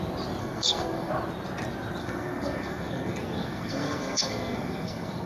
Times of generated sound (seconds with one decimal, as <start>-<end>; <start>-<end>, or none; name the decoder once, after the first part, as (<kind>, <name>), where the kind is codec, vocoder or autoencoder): 0.4-1.1 (codec, SNAC); 2.0-5.3